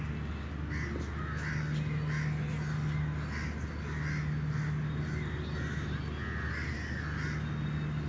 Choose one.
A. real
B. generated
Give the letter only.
A